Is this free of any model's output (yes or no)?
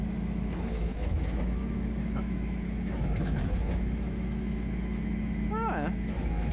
no